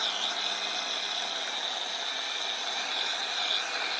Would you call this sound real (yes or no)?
yes